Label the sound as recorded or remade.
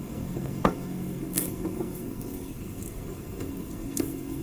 remade